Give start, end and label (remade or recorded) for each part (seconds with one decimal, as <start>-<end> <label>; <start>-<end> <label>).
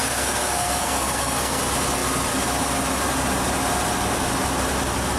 0.0-1.6 remade; 1.6-5.2 recorded